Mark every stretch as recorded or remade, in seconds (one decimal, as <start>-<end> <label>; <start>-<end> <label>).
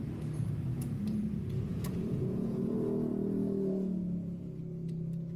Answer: 0.0-0.7 recorded; 0.7-2.7 remade; 2.7-5.4 recorded